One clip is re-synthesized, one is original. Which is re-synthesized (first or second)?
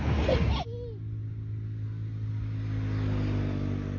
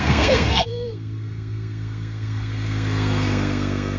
second